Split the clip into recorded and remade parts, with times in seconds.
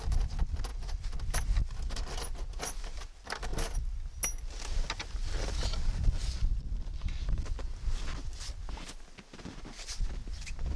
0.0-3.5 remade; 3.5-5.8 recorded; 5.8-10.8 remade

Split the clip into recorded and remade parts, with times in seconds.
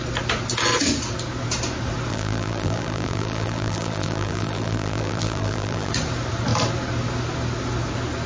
0.0-2.1 recorded; 2.1-5.9 remade; 5.9-8.3 recorded